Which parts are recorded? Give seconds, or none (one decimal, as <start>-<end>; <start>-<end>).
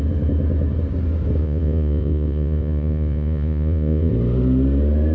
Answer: 0.0-1.4; 4.1-5.1